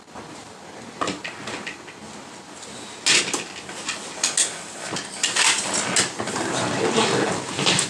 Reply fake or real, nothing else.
real